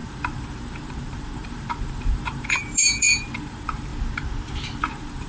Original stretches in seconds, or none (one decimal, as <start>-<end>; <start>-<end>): 3.9-4.8